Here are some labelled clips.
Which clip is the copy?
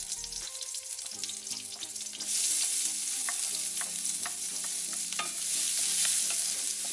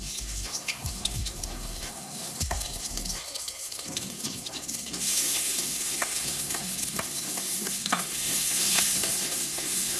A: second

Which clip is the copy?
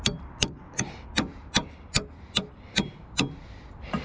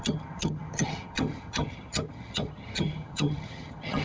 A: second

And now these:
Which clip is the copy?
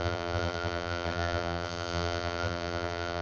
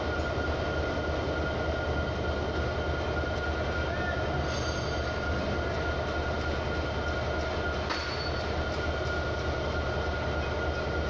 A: first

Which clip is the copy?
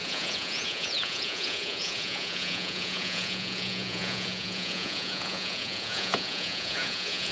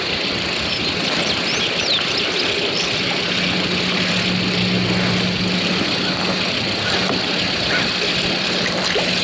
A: first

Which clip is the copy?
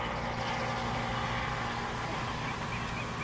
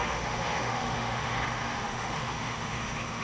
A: second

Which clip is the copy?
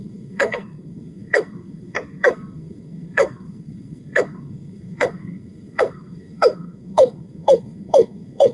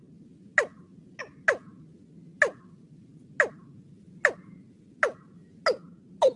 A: first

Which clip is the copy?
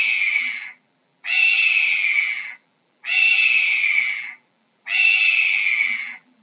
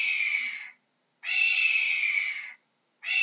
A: first